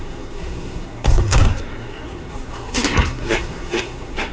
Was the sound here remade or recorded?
remade